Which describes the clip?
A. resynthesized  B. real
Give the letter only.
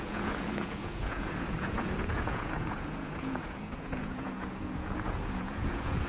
A